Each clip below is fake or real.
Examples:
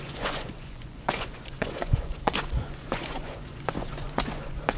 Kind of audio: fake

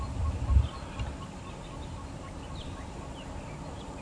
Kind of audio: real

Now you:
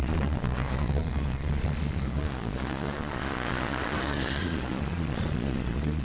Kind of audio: fake